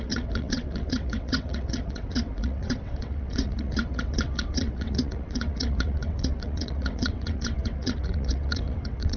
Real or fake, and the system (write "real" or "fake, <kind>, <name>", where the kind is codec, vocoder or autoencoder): fake, vocoder, WaveNeXt